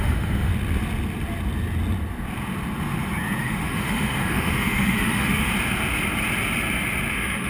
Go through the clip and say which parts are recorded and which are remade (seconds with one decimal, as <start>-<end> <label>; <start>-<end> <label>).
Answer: 0.0-0.5 remade; 0.5-3.4 recorded; 3.4-5.5 remade; 5.5-7.1 recorded; 7.1-7.5 remade